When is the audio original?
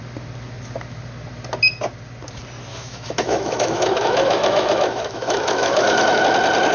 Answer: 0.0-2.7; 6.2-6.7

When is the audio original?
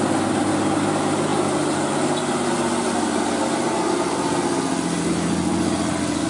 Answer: 0.0-6.3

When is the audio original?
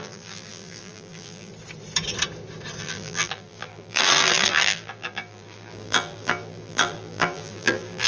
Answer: 1.5-2.8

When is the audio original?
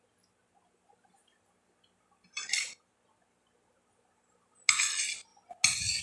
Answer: 0.0-6.0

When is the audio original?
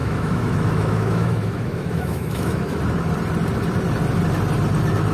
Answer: 2.8-5.1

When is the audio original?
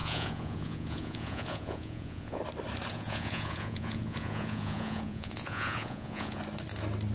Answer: 2.4-2.9; 6.4-7.1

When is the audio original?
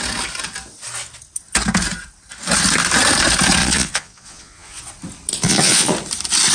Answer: 0.0-3.6; 4.8-5.3; 5.9-6.5